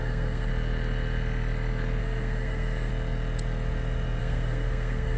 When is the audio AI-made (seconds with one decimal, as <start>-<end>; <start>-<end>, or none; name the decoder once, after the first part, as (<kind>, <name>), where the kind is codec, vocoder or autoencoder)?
0.0-0.5 (codec, SNAC); 2.0-2.9; 4.2-5.2